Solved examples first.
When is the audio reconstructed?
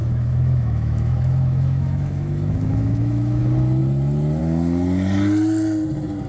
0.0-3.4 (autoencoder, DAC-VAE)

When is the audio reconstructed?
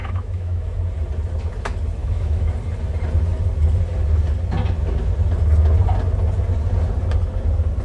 0.0-0.8 (autoencoder, DAC-VAE); 2.0-2.5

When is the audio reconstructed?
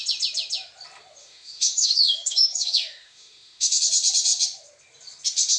1.2-3.8 (autoencoder, DAC-VAE)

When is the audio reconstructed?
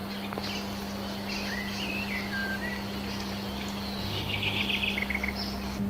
4.0-4.6 (autoencoder, DAC-VAE)